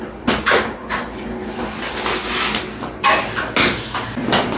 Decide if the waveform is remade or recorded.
recorded